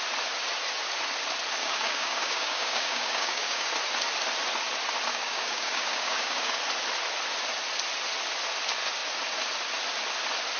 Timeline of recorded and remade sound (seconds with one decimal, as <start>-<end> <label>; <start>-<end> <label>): 0.0-1.6 recorded; 1.6-3.7 remade; 3.7-5.1 recorded; 5.1-6.6 remade; 6.6-10.6 recorded